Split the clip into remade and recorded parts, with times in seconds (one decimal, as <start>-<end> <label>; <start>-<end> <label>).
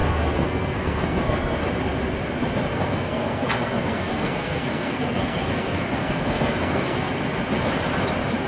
0.0-1.6 remade; 1.6-2.7 recorded; 2.7-7.1 remade; 7.1-8.5 recorded